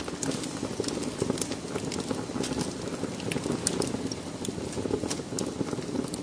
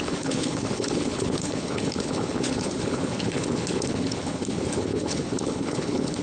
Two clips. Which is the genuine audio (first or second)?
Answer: first